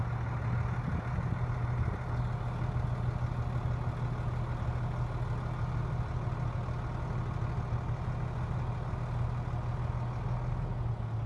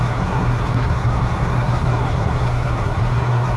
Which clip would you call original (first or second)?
first